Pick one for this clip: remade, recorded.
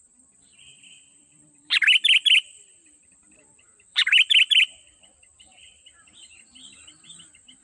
remade